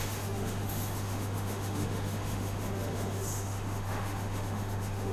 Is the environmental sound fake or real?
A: fake